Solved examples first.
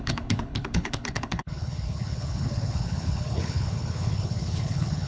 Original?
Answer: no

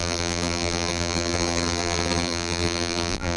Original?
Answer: no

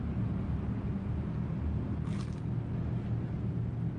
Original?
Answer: yes